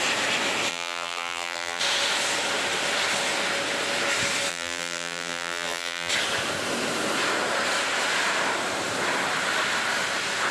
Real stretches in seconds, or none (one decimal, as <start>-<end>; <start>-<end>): 0.0-0.7; 1.8-4.5; 6.1-10.5